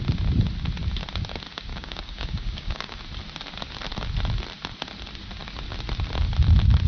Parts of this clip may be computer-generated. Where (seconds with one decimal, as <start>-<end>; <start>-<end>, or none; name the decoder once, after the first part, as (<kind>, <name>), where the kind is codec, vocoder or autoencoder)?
1.7-3.0 (codec, DAC)